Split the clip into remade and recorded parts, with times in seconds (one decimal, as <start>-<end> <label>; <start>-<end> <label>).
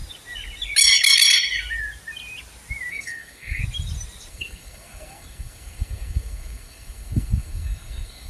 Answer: 0.0-2.9 recorded; 2.9-3.6 remade; 3.6-4.3 recorded; 4.3-8.3 remade